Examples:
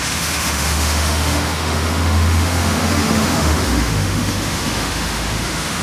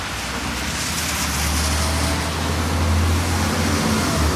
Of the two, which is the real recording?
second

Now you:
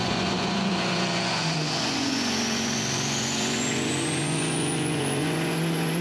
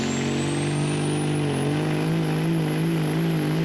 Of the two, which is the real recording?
second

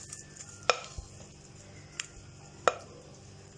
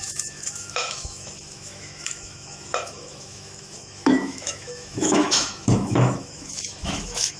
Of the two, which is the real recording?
first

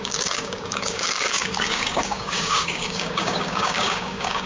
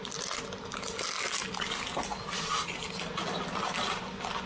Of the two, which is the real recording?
second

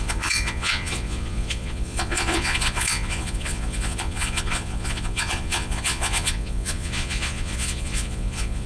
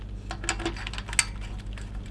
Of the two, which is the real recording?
second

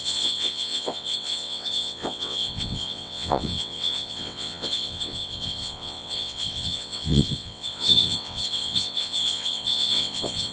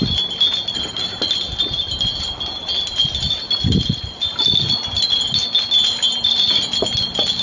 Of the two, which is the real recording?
second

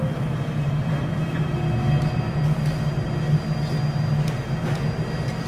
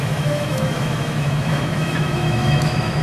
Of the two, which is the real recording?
first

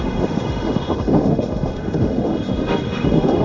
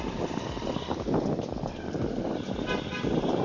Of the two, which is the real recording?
second